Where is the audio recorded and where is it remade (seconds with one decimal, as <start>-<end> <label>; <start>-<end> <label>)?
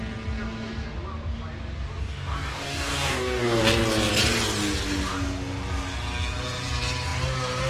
0.0-2.0 recorded; 2.0-3.6 remade; 3.6-7.7 recorded